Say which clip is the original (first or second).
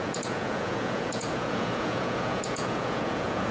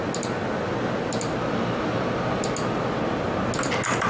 second